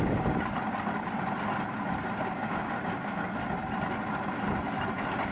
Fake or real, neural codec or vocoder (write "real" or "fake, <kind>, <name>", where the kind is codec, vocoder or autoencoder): real